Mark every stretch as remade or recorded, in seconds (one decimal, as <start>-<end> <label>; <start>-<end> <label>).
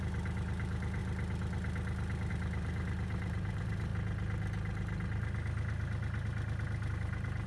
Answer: 0.0-1.0 remade; 1.0-2.3 recorded; 2.3-3.9 remade; 3.9-6.9 recorded; 6.9-7.5 remade